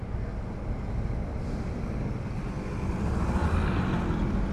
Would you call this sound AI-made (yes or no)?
no